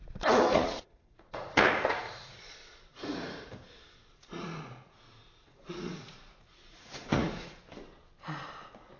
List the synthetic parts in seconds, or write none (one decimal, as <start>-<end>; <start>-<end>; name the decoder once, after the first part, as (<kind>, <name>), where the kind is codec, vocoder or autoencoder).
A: 0.5-3.5 (vocoder, Vocos); 4.1-7.6